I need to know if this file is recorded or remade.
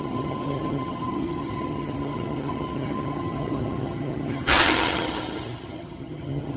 remade